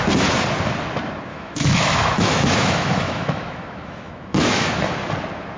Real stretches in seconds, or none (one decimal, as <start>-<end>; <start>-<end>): 0.0-1.3; 4.7-5.6

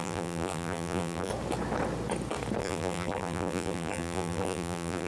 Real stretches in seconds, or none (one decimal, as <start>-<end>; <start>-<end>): 1.3-2.6

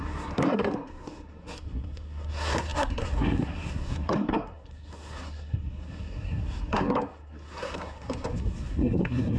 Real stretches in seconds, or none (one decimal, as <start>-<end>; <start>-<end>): none

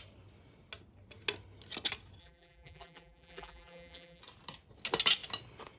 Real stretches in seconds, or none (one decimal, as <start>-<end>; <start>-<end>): 0.0-2.2; 4.2-5.8

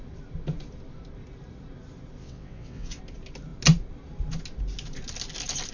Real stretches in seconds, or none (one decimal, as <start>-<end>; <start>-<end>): 0.0-2.2; 3.0-5.7